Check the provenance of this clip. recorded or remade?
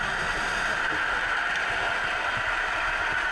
recorded